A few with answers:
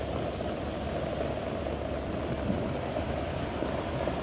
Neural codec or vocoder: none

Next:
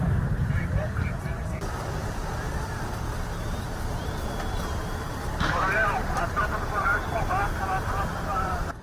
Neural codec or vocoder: vocoder, BigVGAN v2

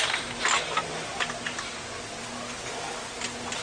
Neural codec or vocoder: none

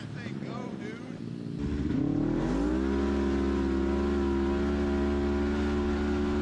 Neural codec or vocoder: none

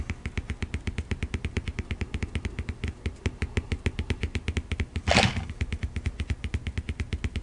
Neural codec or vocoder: none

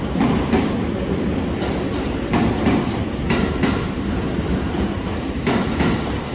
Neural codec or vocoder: vocoder, BigVGAN v2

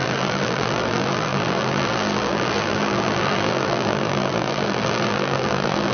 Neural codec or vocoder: vocoder, BigVGAN v2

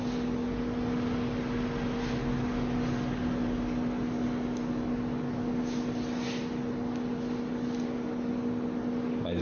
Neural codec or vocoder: none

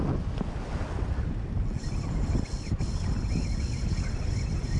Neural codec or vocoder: none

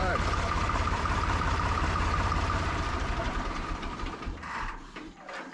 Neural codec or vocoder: vocoder, BigVGAN v2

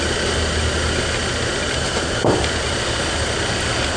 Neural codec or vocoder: none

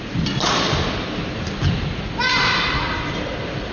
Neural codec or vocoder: none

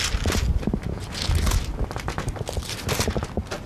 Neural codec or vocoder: none